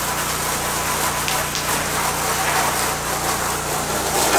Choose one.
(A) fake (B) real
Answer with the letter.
B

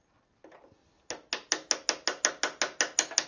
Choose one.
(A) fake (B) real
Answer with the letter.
B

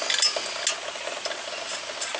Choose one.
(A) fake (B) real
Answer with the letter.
B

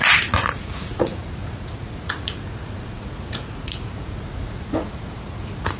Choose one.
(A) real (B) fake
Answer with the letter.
B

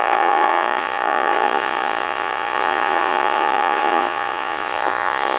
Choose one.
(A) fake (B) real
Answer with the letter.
A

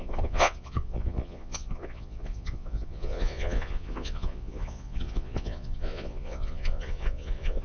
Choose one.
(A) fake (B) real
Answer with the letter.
A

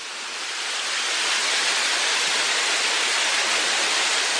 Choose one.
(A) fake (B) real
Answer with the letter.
B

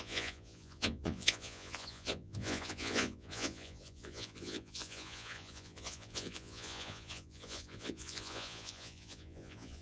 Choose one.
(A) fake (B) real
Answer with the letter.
A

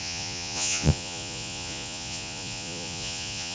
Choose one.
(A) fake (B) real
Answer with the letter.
A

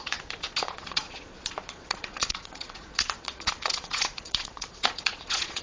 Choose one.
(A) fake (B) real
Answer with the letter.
A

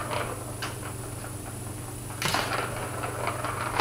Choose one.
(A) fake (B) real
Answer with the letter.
B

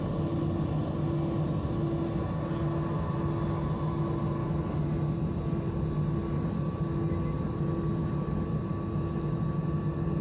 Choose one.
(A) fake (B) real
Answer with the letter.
B